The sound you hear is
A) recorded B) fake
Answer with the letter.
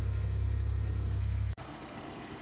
B